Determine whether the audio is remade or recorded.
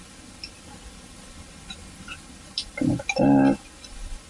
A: recorded